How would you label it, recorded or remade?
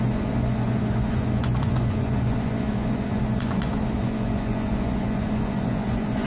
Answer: remade